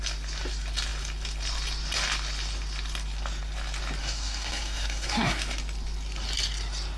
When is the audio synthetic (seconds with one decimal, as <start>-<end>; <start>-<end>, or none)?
4.0-5.4